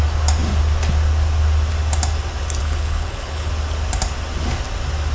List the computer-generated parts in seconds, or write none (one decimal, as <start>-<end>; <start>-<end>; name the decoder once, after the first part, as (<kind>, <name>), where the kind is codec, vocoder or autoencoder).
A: 2.6-3.5 (codec, HILCodec)